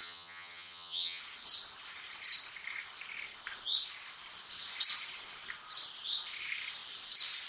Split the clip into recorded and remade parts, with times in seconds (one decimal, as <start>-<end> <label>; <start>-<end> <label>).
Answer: 0.0-1.2 remade; 1.2-7.5 recorded